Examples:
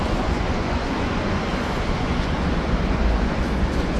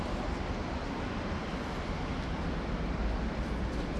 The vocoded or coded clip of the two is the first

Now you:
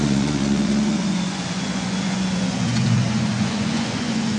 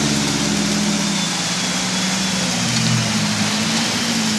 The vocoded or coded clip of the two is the first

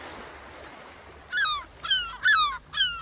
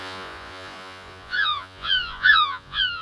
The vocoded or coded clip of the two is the second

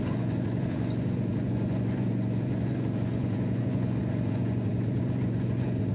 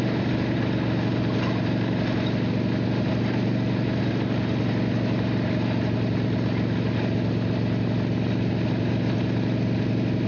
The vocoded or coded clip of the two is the first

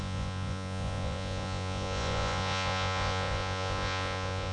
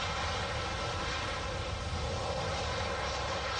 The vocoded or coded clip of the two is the first